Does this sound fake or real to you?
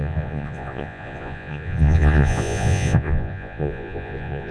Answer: fake